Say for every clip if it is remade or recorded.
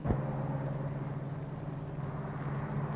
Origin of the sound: recorded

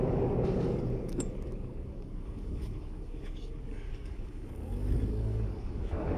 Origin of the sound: remade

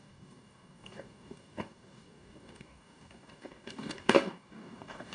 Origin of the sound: remade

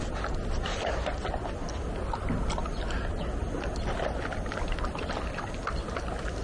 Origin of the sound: recorded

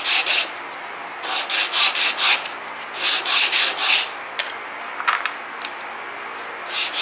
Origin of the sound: recorded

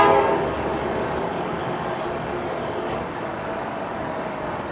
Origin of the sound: remade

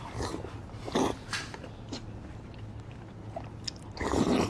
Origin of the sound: recorded